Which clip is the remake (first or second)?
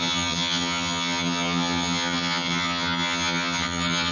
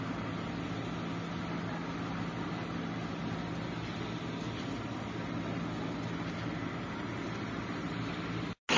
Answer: first